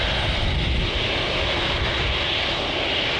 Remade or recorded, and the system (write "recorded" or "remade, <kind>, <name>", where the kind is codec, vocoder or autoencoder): recorded